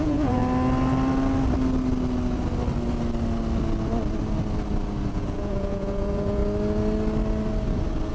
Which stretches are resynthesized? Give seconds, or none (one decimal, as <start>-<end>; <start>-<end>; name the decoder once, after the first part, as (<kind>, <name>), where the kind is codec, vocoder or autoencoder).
0.0-0.4 (vocoder, Vocos); 5.1-6.4